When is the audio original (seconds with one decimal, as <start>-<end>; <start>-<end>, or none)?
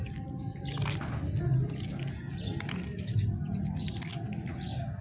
0.0-5.0